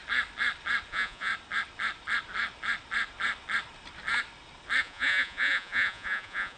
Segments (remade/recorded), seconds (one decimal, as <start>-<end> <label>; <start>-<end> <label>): 0.0-0.9 recorded; 0.9-1.3 remade; 1.3-4.8 recorded; 4.8-6.6 remade